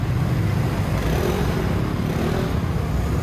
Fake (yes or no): no